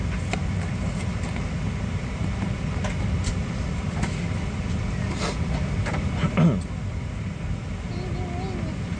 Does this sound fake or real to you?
real